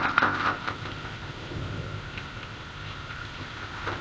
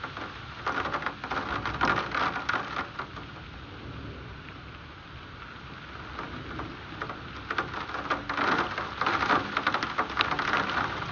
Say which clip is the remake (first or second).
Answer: first